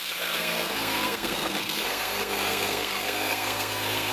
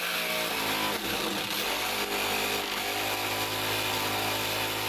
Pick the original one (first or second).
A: second